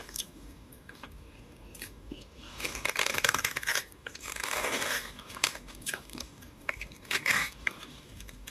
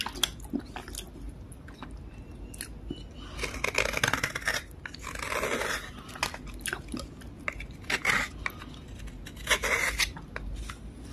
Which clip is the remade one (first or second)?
first